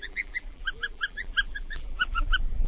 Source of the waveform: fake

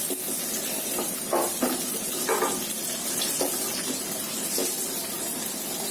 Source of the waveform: real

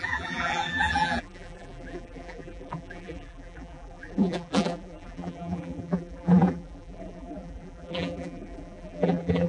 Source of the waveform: fake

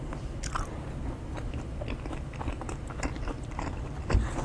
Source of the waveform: real